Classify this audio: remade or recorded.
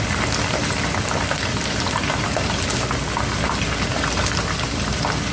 recorded